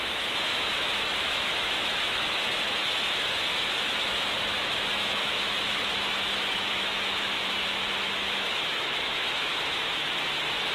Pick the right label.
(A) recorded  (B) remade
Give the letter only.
B